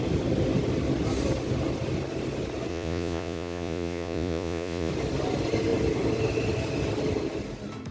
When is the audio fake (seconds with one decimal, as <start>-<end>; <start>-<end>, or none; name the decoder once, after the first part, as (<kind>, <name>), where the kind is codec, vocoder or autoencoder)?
2.7-4.9 (vocoder, Vocos)